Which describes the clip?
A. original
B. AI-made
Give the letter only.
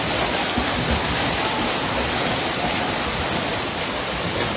A